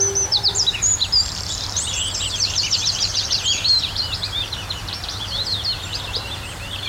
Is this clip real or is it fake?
fake